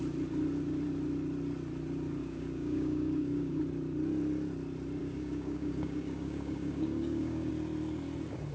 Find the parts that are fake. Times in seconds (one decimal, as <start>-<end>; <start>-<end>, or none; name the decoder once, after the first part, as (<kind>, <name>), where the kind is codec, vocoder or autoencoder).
2.2-3.6 (codec, DAC); 5.0-7.5